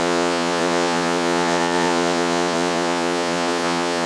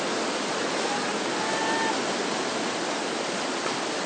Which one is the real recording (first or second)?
second